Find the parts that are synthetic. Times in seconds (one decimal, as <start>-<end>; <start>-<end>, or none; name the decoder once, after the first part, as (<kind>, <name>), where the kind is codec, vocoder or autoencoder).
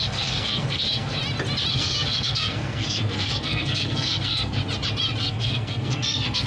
0.0-1.2 (codec, SNAC); 1.7-4.6; 5.2-6.5